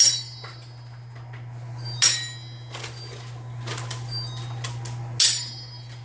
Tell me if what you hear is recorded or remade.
recorded